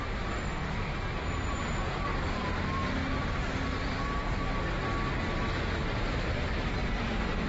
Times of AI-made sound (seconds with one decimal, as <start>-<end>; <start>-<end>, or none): 0.0-0.6; 1.5-3.0; 5.8-6.8